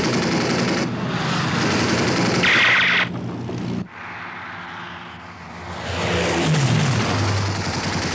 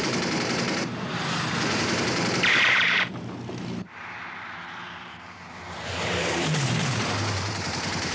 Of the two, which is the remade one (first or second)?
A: second